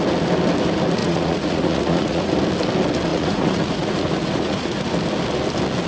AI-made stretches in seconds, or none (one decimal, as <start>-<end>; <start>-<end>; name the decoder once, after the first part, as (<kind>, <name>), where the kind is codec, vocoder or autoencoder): 1.0-2.3 (vocoder, Vocos); 3.1-4.9